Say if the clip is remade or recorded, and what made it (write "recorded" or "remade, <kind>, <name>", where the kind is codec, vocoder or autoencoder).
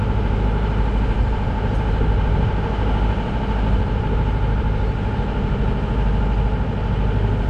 recorded